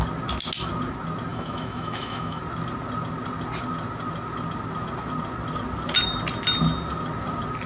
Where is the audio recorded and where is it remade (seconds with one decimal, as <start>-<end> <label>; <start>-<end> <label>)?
0.0-1.3 recorded; 1.3-2.4 remade; 2.4-7.7 recorded